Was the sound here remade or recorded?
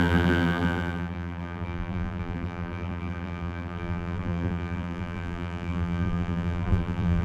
remade